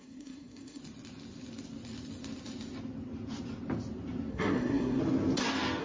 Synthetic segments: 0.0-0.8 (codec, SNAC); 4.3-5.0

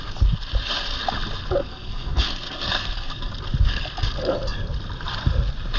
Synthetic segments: 1.6-3.3 (codec, SNAC)

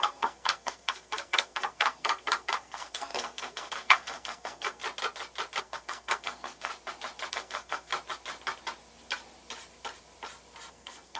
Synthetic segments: 0.0-4.8 (codec, SNAC); 5.6-6.7; 7.3-7.9; 10.7-11.2

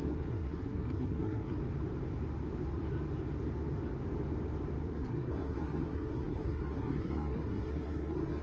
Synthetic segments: 0.0-1.6 (codec, SNAC); 4.8-8.4

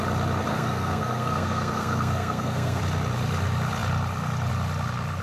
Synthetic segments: 0.5-2.8 (codec, SNAC)

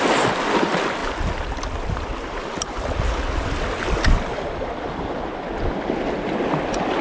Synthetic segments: none